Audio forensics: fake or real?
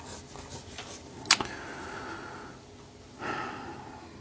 real